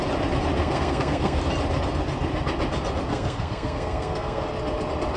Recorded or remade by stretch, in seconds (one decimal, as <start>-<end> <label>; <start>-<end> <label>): 0.0-0.6 recorded; 0.6-1.4 remade; 1.4-3.1 recorded; 3.1-4.4 remade; 4.4-5.2 recorded